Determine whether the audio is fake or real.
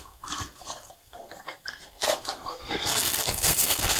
fake